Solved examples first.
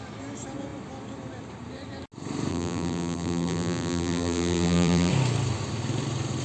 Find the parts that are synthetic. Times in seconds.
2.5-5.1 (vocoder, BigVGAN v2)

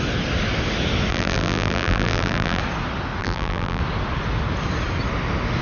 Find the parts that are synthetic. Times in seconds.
1.1-2.6 (vocoder, BigVGAN v2); 3.2-3.8